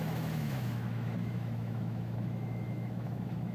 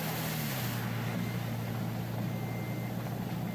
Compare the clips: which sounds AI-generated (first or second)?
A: first